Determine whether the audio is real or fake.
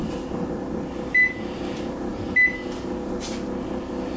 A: real